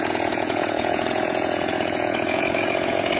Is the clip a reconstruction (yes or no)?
yes